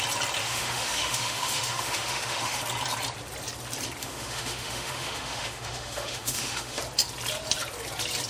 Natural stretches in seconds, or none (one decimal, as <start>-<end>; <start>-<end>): 0.0-0.4; 2.6-4.0; 6.8-8.3